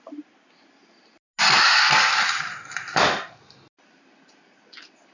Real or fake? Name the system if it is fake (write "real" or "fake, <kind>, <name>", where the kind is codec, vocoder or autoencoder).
real